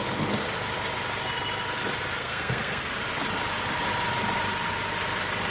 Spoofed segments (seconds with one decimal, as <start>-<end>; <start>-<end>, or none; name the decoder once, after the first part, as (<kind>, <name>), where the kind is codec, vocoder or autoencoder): 2.2-2.9 (codec, SNAC)